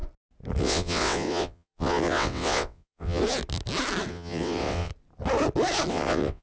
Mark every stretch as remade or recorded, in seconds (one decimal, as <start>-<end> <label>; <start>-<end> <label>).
0.0-0.6 recorded; 0.6-3.2 remade; 3.2-4.1 recorded; 4.1-4.9 remade; 4.9-5.9 recorded; 5.9-6.4 remade